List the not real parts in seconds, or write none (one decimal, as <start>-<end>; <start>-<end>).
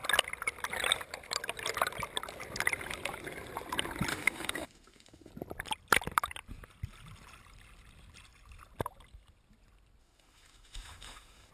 4.1-5.3; 10.0-11.5